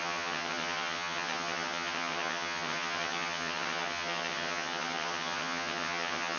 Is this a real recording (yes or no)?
no